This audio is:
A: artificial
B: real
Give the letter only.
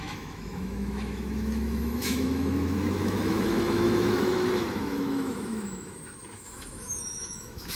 A